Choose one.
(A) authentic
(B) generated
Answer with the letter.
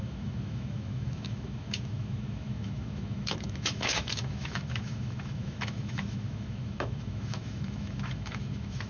B